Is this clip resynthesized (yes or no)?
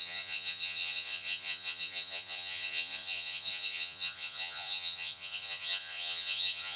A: yes